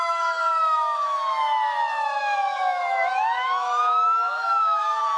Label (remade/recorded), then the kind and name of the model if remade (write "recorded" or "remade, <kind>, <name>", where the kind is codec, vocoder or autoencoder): remade, autoencoder, DAC-VAE